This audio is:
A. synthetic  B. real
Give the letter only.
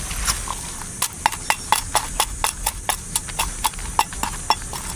B